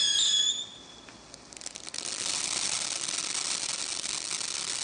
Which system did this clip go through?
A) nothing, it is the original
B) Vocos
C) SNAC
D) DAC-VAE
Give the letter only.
A